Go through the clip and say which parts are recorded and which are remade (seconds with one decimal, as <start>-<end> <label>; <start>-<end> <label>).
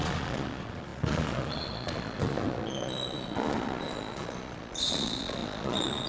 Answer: 0.0-6.1 remade